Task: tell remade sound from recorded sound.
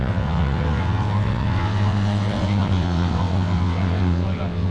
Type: remade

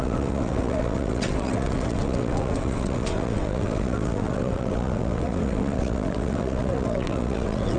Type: remade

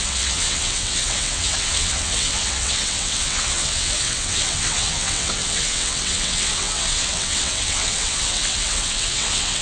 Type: remade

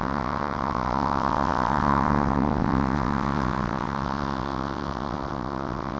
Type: remade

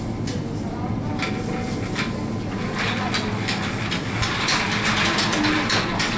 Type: recorded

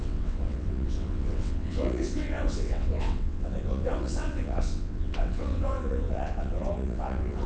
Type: remade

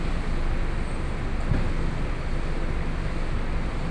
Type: recorded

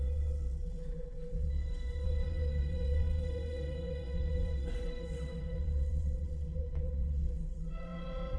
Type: remade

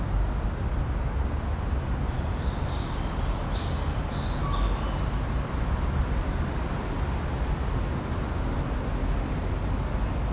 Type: recorded